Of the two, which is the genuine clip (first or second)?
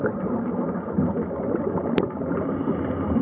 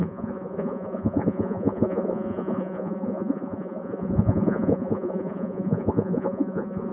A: first